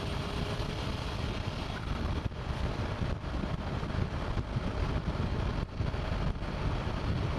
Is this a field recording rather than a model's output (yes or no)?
yes